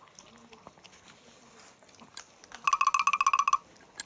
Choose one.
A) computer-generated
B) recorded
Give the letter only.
B